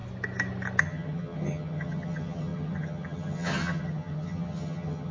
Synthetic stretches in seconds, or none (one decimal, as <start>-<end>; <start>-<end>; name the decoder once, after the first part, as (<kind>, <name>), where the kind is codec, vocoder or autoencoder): 0.8-5.1 (vocoder, HiFi-GAN)